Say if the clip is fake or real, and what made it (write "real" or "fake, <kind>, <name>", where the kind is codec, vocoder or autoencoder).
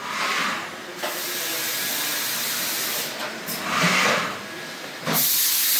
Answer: real